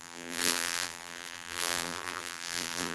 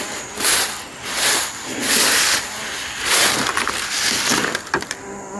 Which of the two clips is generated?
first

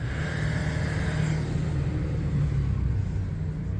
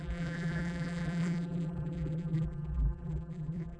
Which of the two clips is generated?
second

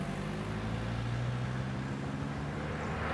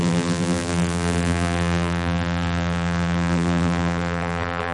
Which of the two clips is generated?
second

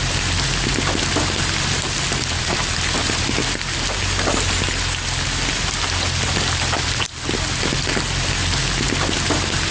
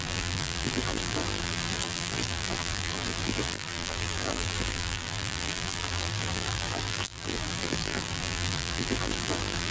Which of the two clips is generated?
second